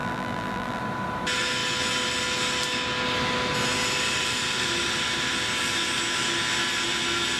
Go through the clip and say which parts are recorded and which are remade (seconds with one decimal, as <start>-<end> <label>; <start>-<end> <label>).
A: 0.0-0.8 remade; 0.8-7.4 recorded